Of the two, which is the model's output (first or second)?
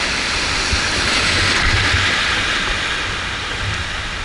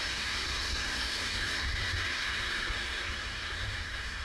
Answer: second